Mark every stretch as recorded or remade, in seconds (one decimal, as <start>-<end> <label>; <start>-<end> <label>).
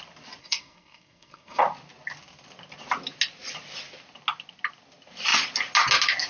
0.0-0.4 recorded; 0.4-1.6 remade; 1.6-6.3 recorded